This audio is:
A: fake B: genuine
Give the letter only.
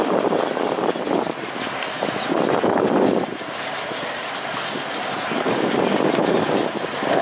B